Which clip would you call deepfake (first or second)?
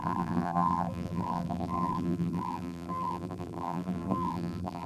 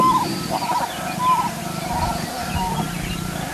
first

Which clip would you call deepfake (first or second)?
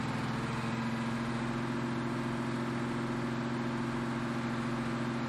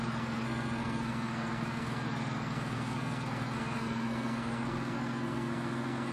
second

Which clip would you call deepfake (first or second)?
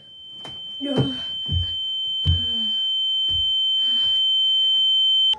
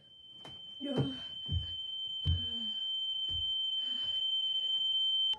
second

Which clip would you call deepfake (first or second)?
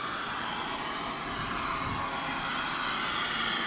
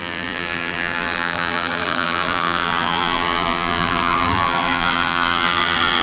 second